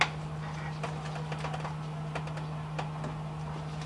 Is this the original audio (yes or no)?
yes